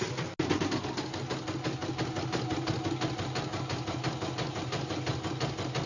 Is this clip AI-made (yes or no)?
no